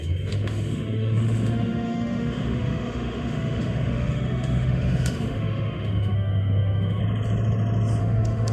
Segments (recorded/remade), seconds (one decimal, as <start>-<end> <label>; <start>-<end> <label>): 0.0-7.0 remade; 7.0-8.0 recorded; 8.0-8.5 remade